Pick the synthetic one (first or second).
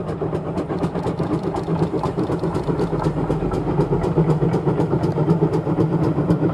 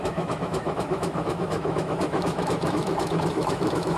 second